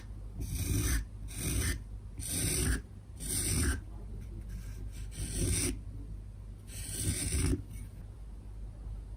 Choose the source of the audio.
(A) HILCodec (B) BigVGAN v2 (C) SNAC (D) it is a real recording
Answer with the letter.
D